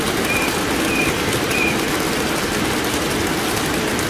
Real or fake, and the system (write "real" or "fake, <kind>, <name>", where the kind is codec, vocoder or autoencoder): real